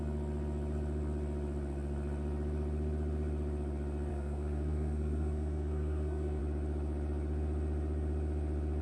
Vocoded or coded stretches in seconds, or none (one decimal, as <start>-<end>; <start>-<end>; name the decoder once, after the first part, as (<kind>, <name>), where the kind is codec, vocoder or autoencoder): 4.1-6.4 (codec, SNAC)